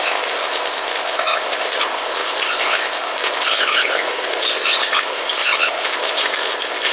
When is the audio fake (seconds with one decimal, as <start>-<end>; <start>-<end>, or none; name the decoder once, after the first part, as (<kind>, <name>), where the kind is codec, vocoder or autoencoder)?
0.0-6.9 (codec, ZipCodec)